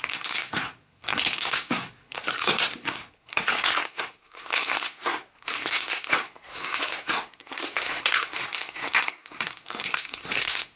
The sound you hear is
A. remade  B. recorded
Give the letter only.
A